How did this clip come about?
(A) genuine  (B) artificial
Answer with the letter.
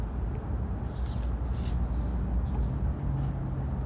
A